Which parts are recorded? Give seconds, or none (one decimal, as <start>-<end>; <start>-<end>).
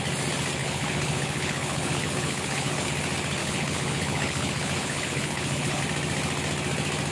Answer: 0.0-0.6; 2.9-3.4; 5.8-7.1